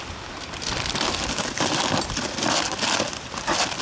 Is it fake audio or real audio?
real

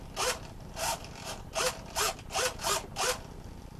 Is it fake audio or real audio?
real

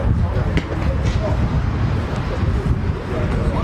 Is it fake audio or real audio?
real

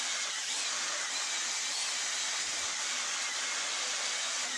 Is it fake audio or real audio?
real